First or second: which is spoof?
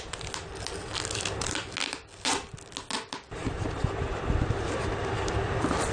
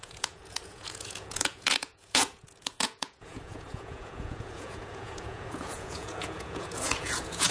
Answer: second